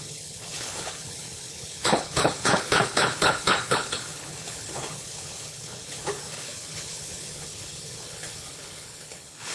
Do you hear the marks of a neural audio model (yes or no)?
yes